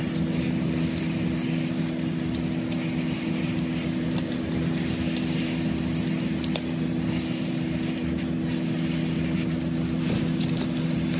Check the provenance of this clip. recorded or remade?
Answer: recorded